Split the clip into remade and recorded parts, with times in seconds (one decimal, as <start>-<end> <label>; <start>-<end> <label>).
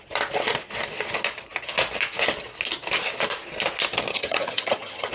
0.0-4.1 recorded; 4.1-5.1 remade